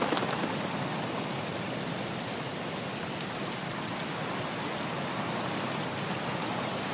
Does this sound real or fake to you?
real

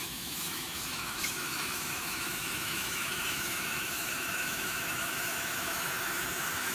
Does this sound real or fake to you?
fake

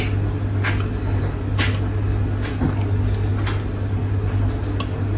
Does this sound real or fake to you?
real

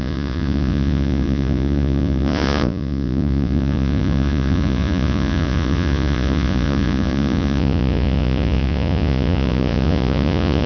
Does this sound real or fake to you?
fake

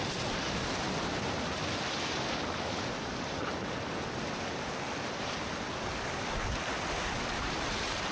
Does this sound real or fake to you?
real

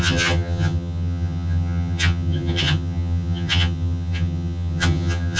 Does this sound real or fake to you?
fake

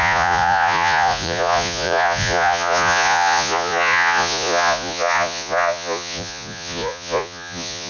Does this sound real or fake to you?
fake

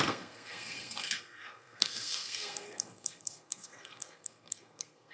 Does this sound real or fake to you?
fake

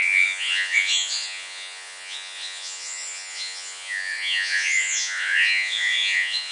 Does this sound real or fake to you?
fake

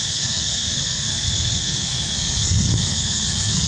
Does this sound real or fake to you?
fake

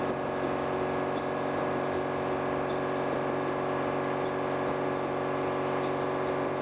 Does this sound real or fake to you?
real